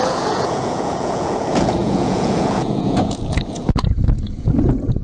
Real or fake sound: fake